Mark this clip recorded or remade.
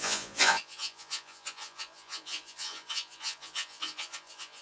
remade